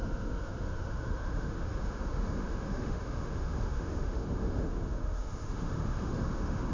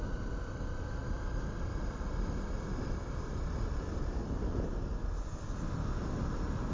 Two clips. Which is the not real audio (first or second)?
first